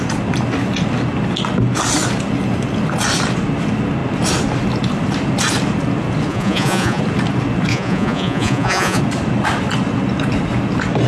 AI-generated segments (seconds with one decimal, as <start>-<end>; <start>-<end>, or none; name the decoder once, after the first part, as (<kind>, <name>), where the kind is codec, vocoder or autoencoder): 6.3-7.0 (vocoder, Vocos); 7.7-9.0